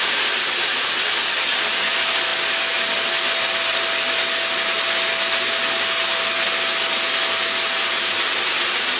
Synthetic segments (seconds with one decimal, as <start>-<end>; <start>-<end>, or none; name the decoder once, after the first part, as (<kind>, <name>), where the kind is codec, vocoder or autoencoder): none